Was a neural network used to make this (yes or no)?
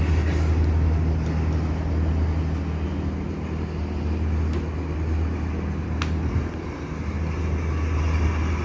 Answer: no